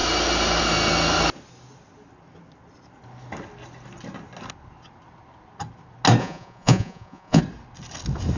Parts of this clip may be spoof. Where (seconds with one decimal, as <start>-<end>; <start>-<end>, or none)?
6.2-7.4